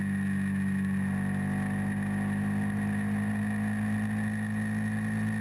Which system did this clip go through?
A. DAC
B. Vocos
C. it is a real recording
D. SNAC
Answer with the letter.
C